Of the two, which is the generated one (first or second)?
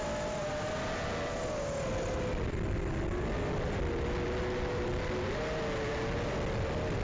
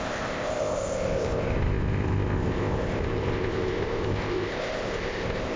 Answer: second